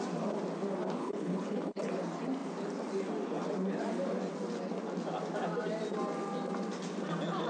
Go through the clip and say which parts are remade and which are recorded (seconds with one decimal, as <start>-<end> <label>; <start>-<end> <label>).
0.0-1.0 recorded; 1.0-1.9 remade; 1.9-7.5 recorded